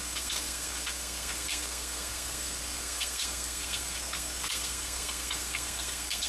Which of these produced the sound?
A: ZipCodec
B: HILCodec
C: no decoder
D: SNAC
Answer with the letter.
D